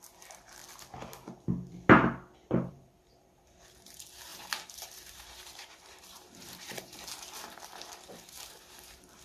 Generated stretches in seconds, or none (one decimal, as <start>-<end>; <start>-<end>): 0.0-0.6; 2.7-9.2